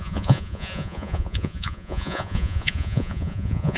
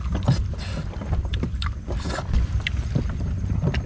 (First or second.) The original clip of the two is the second